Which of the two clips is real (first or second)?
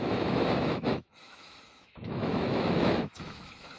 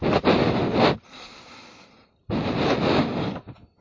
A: second